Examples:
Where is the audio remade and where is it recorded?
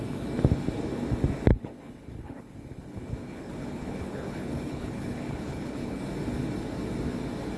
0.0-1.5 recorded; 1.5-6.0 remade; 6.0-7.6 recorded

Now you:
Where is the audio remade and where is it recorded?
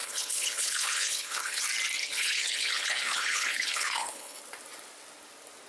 0.0-1.6 remade; 1.6-2.0 recorded; 2.0-4.4 remade; 4.4-5.7 recorded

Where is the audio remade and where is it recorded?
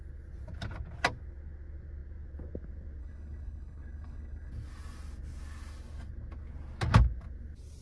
0.0-3.0 recorded; 3.0-4.5 remade; 4.5-7.8 recorded